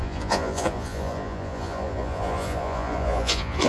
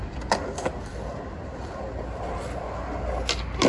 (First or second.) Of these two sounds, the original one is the second